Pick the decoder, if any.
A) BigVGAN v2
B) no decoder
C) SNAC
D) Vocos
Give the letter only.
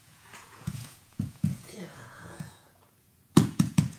D